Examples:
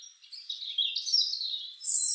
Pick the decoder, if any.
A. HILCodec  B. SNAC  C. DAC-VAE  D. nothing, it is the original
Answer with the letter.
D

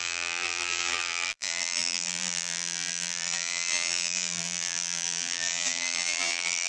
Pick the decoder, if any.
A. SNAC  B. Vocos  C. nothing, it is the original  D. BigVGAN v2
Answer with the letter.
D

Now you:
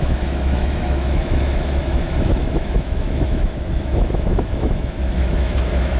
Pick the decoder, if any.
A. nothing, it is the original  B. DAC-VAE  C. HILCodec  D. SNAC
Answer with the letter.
B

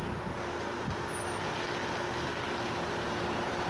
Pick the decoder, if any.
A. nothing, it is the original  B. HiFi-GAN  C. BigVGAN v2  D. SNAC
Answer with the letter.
A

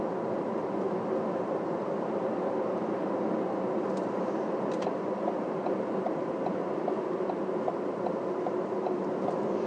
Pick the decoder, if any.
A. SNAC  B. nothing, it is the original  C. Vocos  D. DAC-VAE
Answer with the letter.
B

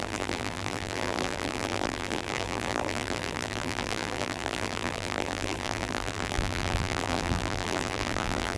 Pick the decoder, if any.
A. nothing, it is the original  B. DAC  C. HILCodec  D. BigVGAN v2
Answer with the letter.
D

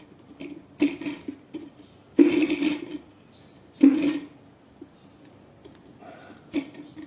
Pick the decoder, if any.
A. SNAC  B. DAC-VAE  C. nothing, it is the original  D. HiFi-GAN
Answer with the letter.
C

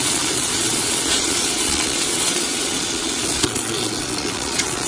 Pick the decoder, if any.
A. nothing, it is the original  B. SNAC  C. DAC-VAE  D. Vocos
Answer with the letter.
D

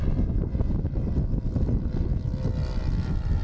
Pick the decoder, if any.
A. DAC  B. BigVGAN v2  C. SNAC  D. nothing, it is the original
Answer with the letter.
D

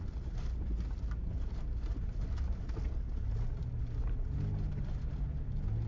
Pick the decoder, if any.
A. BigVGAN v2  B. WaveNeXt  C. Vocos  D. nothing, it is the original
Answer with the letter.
D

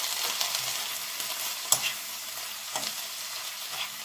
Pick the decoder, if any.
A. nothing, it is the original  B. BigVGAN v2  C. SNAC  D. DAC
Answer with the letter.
A